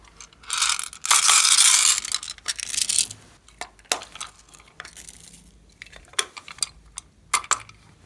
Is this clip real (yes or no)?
yes